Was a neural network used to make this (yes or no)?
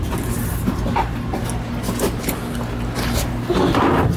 no